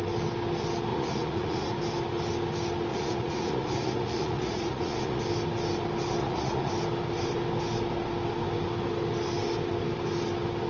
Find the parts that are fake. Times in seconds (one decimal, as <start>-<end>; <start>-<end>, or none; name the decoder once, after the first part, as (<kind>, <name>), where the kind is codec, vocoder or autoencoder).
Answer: 0.9-1.8 (vocoder, Vocos); 2.9-5.2; 6.2-6.7